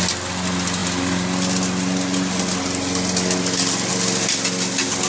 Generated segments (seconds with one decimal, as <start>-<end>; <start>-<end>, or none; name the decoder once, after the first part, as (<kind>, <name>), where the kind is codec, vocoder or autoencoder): none